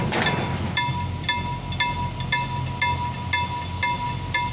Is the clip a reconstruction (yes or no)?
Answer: no